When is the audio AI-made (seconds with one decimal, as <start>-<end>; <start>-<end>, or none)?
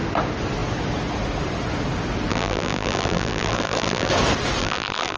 2.3-4.1; 4.6-5.2